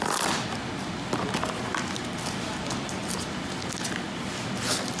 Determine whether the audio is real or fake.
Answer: real